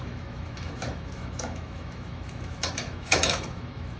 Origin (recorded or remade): remade